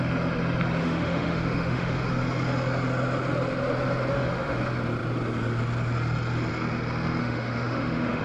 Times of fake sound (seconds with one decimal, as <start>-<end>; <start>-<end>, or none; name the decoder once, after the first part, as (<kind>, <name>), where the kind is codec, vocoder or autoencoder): 0.8-2.1 (autoencoder, DAC-VAE); 4.1-4.6; 7.2-8.2